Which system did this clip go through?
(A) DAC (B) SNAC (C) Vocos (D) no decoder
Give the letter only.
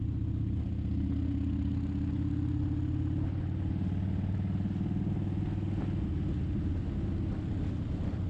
D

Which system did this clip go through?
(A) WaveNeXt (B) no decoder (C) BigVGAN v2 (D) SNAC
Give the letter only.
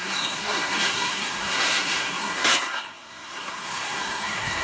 D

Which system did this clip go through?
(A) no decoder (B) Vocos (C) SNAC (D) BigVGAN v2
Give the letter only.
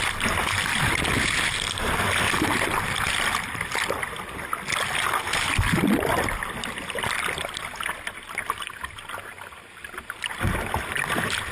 A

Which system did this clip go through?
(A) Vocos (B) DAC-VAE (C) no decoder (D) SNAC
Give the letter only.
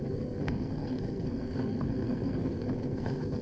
D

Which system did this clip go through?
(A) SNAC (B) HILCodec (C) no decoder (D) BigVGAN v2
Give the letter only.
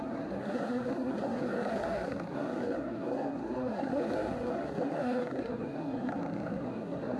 A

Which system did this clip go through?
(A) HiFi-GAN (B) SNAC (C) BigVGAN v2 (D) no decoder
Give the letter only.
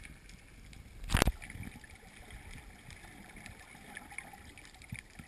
D